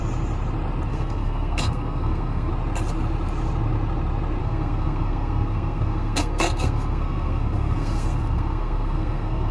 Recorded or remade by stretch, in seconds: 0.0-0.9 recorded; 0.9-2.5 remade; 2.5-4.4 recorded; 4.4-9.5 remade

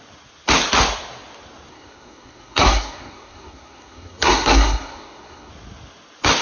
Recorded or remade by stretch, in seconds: 0.0-1.7 recorded; 1.7-5.5 remade; 5.5-6.4 recorded

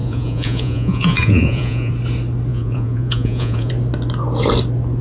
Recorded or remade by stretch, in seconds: 0.0-1.9 remade; 1.9-2.5 recorded; 2.5-3.7 remade; 3.7-5.0 recorded

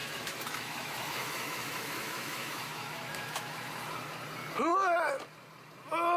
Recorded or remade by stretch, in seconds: 0.0-3.7 remade; 3.7-6.2 recorded